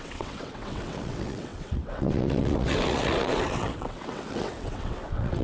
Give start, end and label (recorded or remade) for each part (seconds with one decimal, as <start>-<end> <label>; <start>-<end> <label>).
0.0-5.4 remade